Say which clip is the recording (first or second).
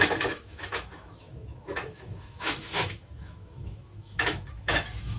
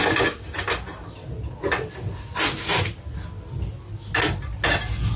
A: second